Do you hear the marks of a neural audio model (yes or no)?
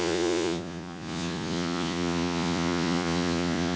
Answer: yes